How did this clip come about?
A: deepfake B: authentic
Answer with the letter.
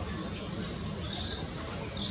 B